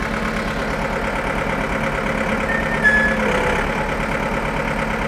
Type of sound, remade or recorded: recorded